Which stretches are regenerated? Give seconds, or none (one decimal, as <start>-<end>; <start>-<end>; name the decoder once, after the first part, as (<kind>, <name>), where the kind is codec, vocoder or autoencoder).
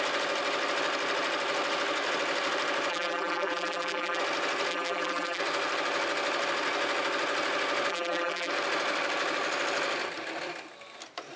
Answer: 2.9-4.2 (vocoder, BigVGAN v2); 4.7-5.4; 7.9-8.5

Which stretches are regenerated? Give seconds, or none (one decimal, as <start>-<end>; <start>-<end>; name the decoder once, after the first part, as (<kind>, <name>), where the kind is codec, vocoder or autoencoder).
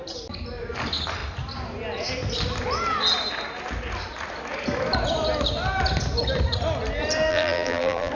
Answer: 7.3-8.1 (vocoder, BigVGAN v2)